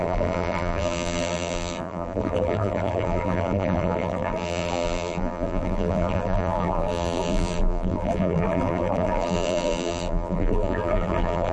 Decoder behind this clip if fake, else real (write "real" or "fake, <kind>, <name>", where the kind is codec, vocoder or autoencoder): fake, vocoder, BigVGAN v2